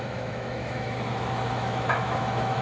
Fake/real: fake